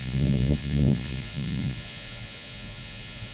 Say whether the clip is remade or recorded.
remade